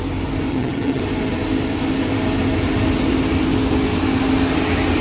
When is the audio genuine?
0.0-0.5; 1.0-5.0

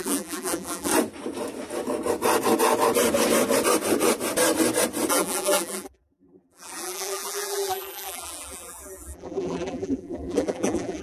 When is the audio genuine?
0.9-5.1

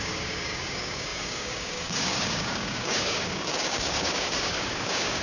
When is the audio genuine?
none

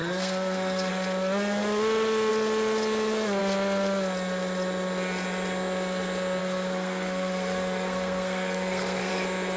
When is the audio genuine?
0.9-6.4; 9.1-9.6

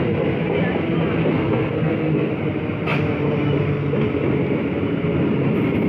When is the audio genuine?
0.0-1.2; 2.3-5.9

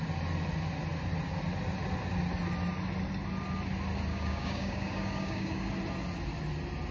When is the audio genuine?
0.0-4.1; 5.7-6.9